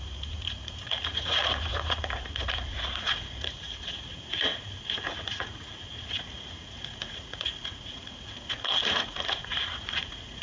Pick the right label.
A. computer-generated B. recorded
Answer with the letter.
A